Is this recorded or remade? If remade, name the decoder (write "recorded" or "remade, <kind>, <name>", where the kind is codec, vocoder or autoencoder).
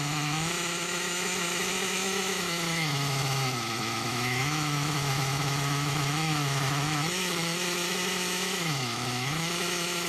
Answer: remade, autoencoder, DAC-VAE